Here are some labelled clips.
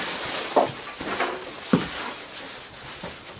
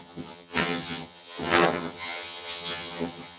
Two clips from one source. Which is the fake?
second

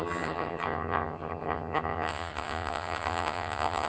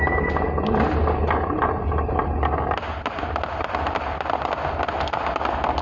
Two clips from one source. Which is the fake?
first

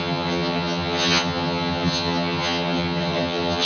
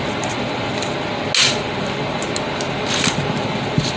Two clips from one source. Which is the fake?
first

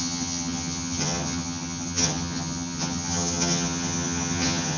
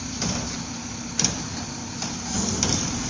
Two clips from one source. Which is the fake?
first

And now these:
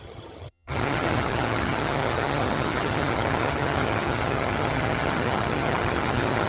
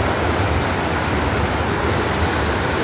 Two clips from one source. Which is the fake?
first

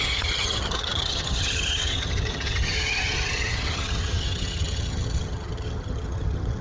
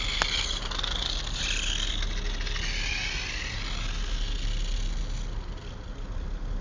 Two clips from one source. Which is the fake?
first